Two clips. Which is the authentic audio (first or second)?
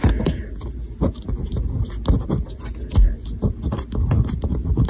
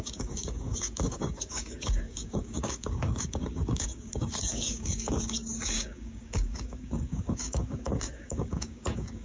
first